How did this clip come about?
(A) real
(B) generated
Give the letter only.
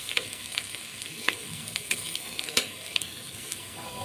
B